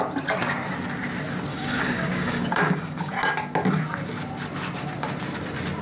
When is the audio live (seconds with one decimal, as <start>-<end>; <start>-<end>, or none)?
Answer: 0.0-1.5; 3.1-5.8